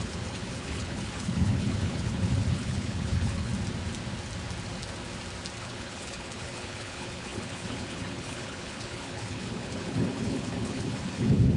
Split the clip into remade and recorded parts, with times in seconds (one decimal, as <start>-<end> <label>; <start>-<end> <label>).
0.0-3.5 remade; 3.5-5.6 recorded; 5.6-11.6 remade